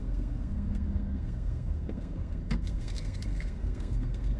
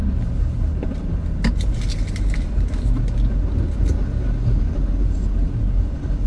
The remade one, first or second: first